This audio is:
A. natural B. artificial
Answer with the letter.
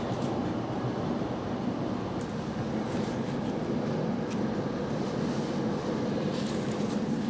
A